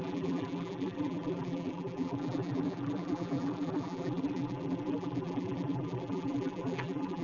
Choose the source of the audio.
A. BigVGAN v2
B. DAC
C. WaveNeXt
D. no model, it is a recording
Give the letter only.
A